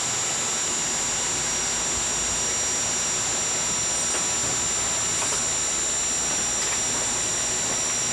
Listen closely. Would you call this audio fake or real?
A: real